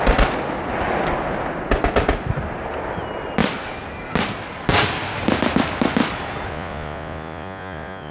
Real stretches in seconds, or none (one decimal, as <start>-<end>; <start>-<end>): 0.0-6.5